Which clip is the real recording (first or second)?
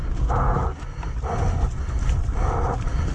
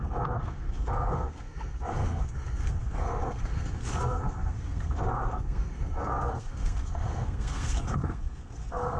first